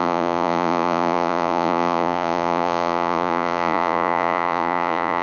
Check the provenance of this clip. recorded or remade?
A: remade